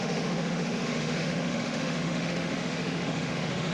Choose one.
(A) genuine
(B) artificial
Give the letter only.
B